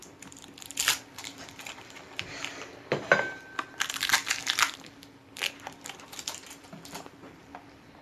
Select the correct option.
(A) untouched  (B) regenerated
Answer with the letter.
B